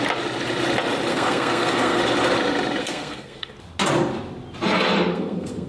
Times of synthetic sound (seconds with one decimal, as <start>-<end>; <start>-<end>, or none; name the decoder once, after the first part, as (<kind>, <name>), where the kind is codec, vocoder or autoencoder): 1.1-2.0 (codec, SNAC); 2.8-3.5; 5.1-5.7